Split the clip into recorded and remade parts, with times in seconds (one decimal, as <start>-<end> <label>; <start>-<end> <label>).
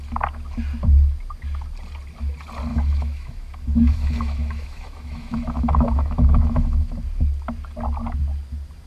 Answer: 0.0-2.7 recorded; 2.7-7.0 remade; 7.0-8.9 recorded